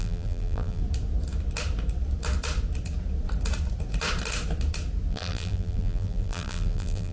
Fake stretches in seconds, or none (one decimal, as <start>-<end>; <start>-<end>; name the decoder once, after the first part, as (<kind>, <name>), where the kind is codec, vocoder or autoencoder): 0.0-0.8 (vocoder, BigVGAN v2); 5.1-7.1